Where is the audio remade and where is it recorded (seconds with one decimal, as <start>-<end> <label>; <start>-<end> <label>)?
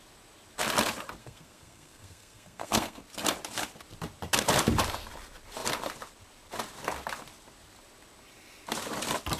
0.0-1.2 recorded; 1.2-3.0 remade; 3.0-9.4 recorded